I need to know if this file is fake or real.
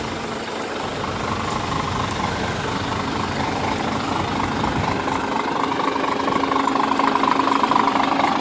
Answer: real